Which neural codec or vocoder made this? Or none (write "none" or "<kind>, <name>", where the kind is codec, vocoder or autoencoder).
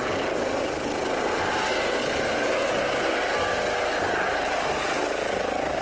none